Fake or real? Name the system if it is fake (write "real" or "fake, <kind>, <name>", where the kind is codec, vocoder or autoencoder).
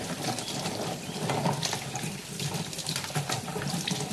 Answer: real